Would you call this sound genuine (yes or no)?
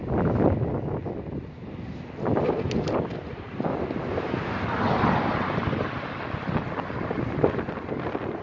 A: yes